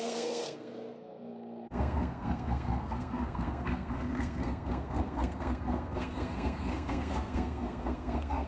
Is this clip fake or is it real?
fake